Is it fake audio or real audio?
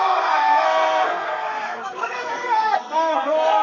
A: fake